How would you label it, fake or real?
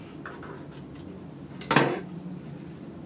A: real